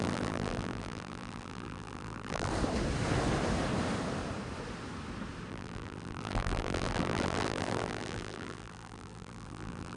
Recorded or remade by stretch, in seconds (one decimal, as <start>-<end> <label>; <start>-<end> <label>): 0.0-2.5 remade; 2.5-5.5 recorded; 5.5-10.0 remade